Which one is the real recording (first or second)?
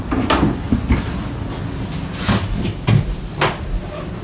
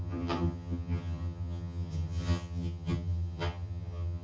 first